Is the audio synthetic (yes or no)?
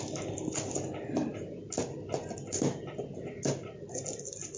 no